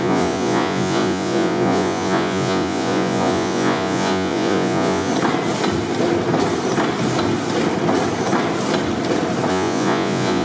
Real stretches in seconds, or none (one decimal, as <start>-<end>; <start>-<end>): 5.1-9.5